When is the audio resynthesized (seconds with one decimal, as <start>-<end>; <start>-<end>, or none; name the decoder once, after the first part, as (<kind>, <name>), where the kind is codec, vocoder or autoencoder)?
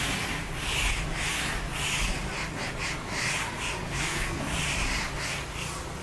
3.8-4.4 (codec, SNAC)